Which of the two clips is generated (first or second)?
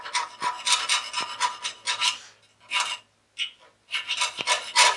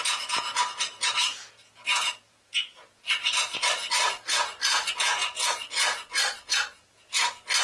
second